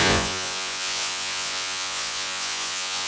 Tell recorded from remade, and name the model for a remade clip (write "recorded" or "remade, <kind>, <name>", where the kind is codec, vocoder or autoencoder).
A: remade, vocoder, Vocos